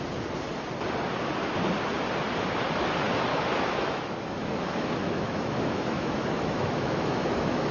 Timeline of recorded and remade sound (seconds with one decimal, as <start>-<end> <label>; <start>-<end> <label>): 0.0-3.3 recorded; 3.3-7.7 remade